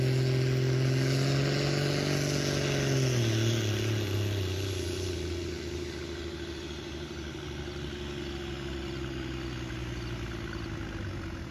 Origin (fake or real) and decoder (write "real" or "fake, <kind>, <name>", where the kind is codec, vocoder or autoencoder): real